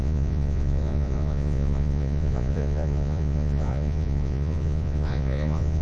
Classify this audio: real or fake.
fake